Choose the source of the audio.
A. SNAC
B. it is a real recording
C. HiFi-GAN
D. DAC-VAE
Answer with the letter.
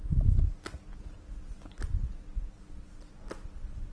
B